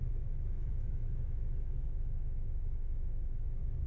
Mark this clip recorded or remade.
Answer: remade